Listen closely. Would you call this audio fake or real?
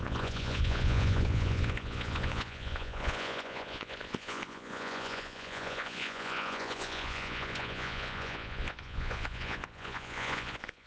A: fake